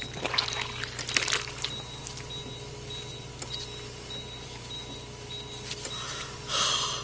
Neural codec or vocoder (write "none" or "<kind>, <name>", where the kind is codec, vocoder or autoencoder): none